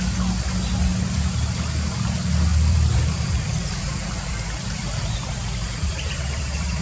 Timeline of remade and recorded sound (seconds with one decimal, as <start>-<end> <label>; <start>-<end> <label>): 0.0-2.5 recorded; 2.5-6.8 remade

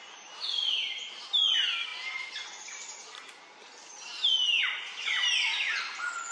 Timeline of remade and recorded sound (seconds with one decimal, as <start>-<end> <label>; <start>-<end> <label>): 0.0-6.3 recorded

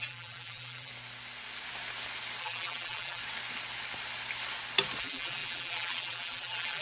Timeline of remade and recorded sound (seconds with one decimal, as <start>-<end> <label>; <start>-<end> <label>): 0.0-0.9 remade; 0.9-2.4 recorded; 2.4-3.2 remade; 3.2-5.0 recorded; 5.0-6.8 remade

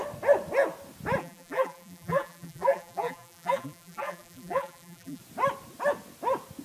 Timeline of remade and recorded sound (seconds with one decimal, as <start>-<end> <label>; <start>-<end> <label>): 0.0-1.2 recorded; 1.2-5.2 remade; 5.2-6.6 recorded

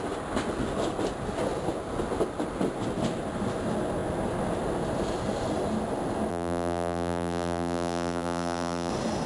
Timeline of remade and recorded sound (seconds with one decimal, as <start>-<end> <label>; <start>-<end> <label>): 0.0-6.3 recorded; 6.3-8.9 remade; 8.9-9.3 recorded